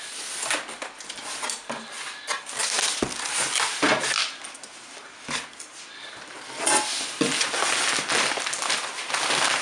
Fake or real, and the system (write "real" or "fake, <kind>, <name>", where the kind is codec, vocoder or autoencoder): real